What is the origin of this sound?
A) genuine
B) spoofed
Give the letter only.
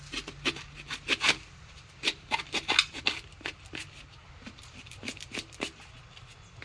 A